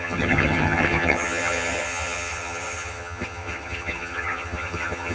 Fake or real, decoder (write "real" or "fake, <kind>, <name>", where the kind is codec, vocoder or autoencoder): fake, vocoder, HiFi-GAN